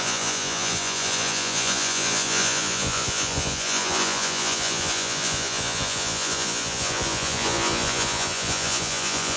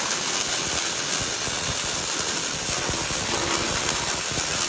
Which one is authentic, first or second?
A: second